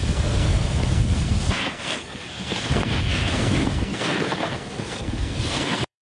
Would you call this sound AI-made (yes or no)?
yes